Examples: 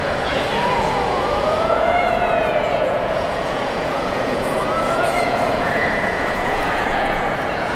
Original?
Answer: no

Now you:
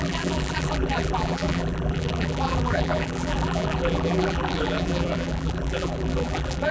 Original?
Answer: no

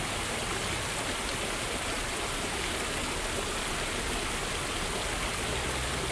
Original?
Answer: yes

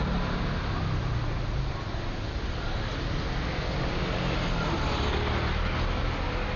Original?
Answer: yes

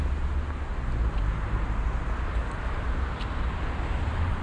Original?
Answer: yes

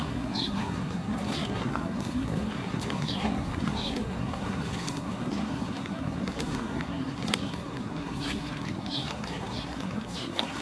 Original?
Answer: no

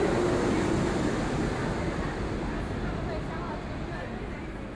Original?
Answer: yes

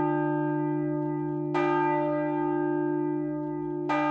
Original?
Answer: yes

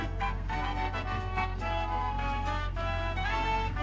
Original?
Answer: no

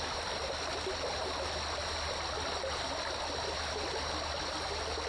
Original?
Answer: yes